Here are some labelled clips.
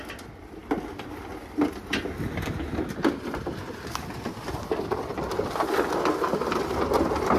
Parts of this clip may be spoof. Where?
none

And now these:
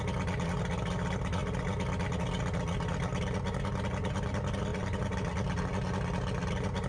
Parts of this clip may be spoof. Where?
4.7-5.6 (vocoder, BigVGAN v2)

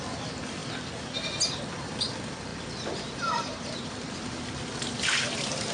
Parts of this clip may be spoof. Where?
none

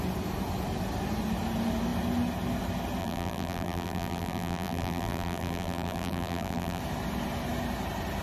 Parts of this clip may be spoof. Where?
3.0-6.8 (vocoder, BigVGAN v2)

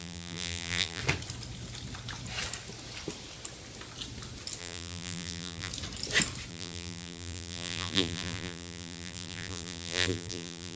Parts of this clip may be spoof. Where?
0.0-1.0 (vocoder, BigVGAN v2); 4.6-5.7; 6.5-10.8